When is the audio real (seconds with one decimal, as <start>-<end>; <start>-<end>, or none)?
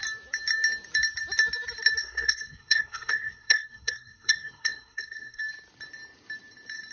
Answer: 0.0-2.0; 5.4-6.9